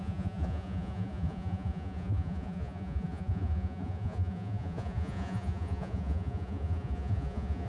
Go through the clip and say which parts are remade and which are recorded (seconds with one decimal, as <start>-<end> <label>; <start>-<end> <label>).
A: 0.0-7.7 remade